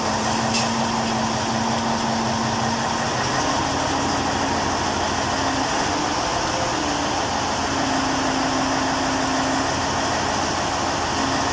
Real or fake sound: real